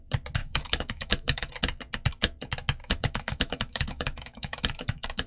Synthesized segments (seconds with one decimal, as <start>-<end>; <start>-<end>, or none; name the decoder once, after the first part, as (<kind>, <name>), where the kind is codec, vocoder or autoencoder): 0.4-1.5 (autoencoder, DAC-VAE); 2.8-5.3